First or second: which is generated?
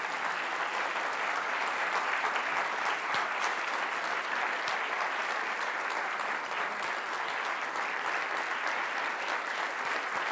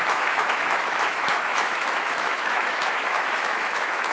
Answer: second